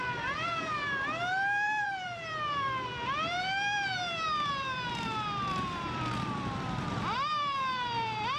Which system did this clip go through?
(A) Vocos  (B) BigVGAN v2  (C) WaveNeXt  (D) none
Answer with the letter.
B